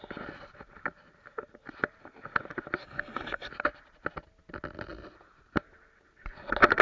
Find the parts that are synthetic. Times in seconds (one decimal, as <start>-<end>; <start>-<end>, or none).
2.8-3.5